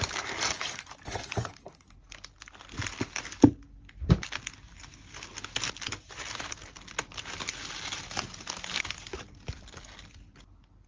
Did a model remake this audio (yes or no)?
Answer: no